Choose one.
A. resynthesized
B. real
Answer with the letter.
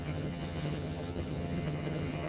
A